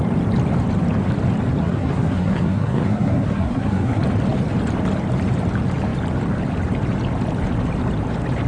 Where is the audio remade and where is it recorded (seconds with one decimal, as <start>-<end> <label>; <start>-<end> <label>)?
0.0-1.6 recorded; 1.6-4.0 remade; 4.0-8.5 recorded

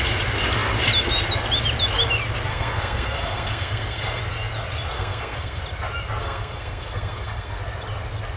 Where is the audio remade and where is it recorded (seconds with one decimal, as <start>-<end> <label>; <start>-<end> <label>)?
0.0-2.5 recorded; 2.5-4.2 remade; 4.2-4.9 recorded; 4.9-5.6 remade; 5.6-6.2 recorded; 6.2-7.6 remade; 7.6-8.4 recorded